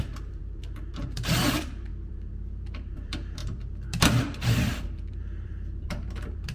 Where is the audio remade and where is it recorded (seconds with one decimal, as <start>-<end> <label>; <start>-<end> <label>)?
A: 0.0-6.5 remade